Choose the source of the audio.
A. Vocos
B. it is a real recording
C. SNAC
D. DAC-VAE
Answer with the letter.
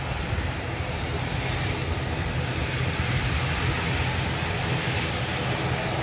B